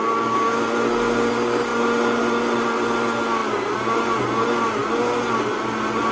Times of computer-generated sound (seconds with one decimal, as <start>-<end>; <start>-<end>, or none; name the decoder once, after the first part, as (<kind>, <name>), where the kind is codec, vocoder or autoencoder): 0.0-0.6 (codec, DAC)